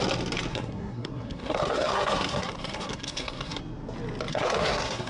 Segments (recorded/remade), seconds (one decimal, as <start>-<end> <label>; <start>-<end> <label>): 0.0-0.5 recorded; 0.5-3.6 remade; 3.6-4.3 recorded; 4.3-5.1 remade